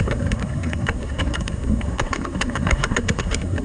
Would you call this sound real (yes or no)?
no